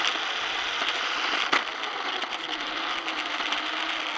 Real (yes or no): yes